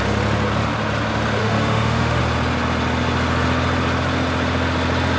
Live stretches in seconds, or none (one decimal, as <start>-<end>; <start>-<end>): 0.0-1.4; 2.2-5.2